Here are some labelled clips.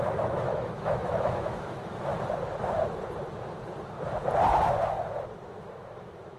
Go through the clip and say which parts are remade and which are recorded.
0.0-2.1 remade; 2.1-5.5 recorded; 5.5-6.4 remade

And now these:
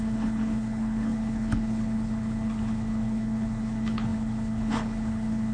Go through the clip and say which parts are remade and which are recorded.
0.0-5.5 remade

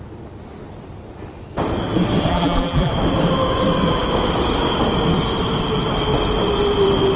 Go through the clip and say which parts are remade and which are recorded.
0.0-2.3 recorded; 2.3-2.9 remade; 2.9-7.2 recorded

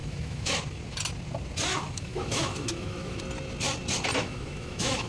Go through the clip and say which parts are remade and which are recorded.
0.0-0.5 remade; 0.5-1.7 recorded; 1.7-3.2 remade; 3.2-4.2 recorded; 4.2-5.1 remade

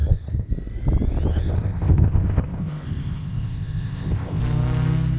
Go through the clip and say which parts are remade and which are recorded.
0.0-0.5 remade; 0.5-1.3 recorded; 1.3-4.4 remade; 4.4-5.2 recorded

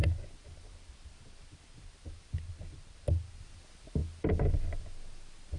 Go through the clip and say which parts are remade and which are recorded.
0.0-5.6 recorded

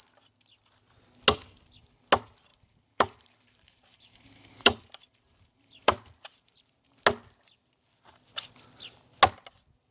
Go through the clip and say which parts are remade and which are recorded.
0.0-2.5 recorded; 2.5-6.6 remade; 6.6-9.9 recorded